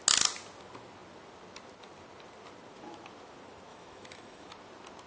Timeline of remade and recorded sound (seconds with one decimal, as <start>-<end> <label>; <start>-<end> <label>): 0.0-3.7 recorded; 3.7-4.5 remade; 4.5-5.1 recorded